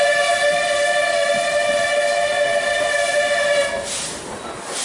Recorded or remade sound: recorded